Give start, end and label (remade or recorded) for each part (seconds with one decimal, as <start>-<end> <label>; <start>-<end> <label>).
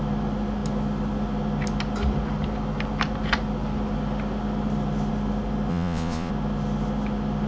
0.0-5.7 recorded; 5.7-6.3 remade; 6.3-7.5 recorded